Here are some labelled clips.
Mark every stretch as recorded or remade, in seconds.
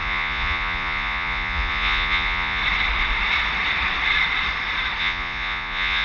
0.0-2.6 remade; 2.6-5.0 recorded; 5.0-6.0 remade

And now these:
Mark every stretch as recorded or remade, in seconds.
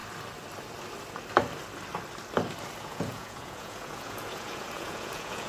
0.0-2.8 recorded; 2.8-5.5 remade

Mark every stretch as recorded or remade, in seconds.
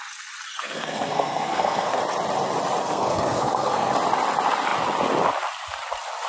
0.0-0.5 recorded; 0.5-2.0 remade; 2.0-2.8 recorded; 2.8-3.9 remade; 3.9-6.3 recorded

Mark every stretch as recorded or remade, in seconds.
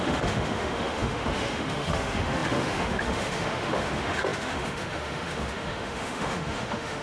0.0-7.0 remade